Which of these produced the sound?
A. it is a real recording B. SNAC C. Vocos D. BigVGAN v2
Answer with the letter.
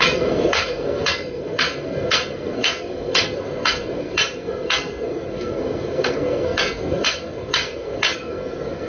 B